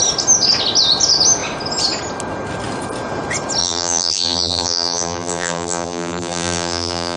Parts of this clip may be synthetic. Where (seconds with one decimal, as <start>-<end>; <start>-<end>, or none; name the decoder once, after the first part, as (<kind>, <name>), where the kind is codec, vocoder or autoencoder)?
3.6-7.2 (vocoder, BigVGAN v2)